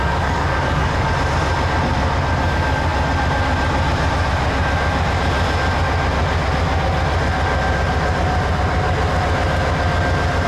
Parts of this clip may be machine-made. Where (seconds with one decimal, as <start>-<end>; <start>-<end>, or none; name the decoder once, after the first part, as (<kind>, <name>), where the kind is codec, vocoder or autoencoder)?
0.0-1.1 (codec, DAC)